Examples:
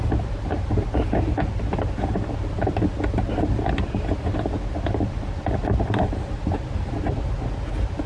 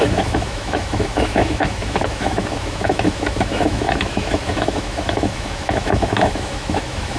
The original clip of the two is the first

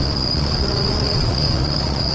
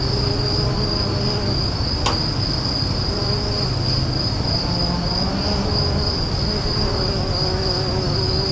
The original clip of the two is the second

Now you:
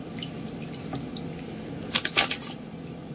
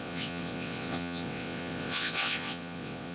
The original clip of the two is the first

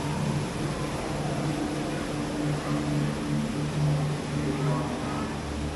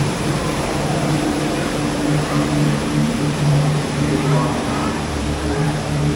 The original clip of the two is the first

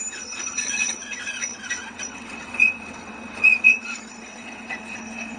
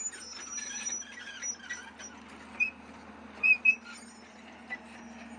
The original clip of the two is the second